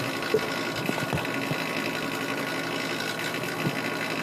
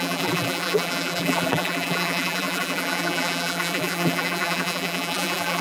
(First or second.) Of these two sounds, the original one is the first